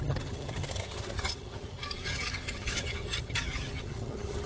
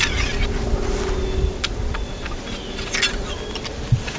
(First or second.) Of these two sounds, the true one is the second